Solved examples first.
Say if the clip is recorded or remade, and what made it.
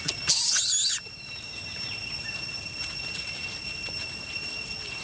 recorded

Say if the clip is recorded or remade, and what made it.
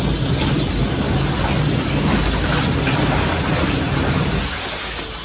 recorded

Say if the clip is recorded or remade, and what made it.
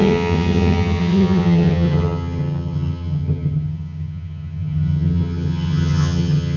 remade, vocoder, HiFi-GAN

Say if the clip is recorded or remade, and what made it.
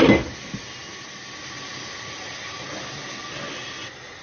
recorded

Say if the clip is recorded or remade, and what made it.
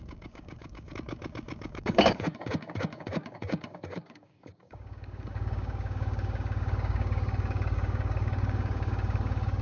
remade, codec, DAC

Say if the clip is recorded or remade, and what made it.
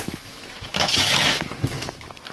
remade, autoencoder, DAC-VAE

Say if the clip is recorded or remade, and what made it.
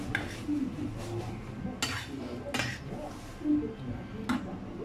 recorded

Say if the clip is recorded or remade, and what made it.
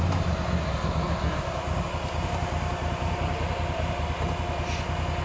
recorded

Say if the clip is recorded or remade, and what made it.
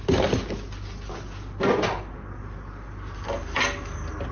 recorded